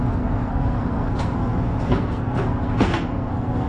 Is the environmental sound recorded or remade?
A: remade